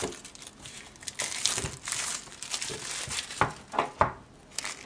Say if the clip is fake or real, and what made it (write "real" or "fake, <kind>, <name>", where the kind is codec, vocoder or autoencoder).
real